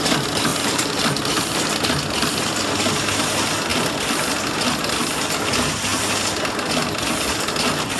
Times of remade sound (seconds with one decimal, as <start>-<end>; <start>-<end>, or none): 0.5-1.6